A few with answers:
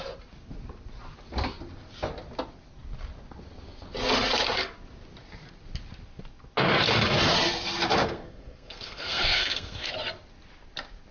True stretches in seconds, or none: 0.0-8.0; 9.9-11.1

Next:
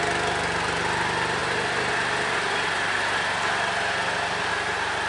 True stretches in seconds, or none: 0.0-5.1